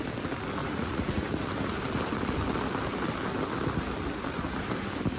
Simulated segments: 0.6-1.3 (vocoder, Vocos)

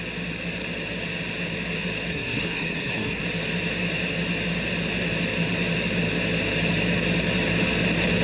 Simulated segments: 2.1-3.2 (codec, SNAC)